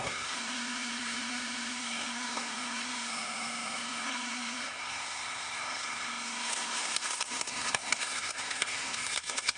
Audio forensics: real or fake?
fake